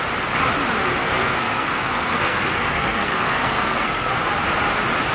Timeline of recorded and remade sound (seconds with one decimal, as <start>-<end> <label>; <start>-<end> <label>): 0.0-1.0 recorded; 1.0-4.1 remade; 4.1-5.1 recorded